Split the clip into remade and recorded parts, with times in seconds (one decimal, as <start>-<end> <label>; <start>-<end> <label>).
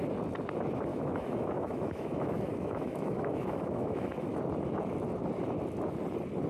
0.0-0.9 recorded; 0.9-4.4 remade; 4.4-6.5 recorded